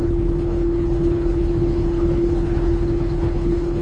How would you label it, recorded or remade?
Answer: remade